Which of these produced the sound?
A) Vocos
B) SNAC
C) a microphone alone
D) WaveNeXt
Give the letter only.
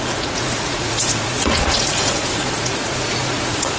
A